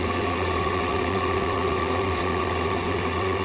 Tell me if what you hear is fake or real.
fake